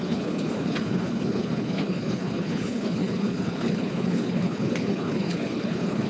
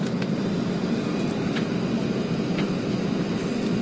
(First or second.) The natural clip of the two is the second